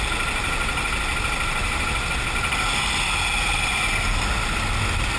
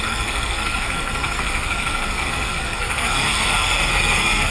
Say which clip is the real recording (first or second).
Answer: first